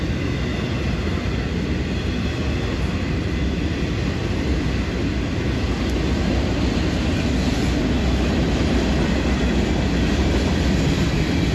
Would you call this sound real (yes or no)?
yes